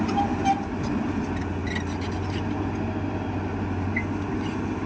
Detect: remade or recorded recorded